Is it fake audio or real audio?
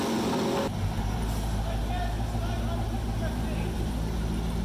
real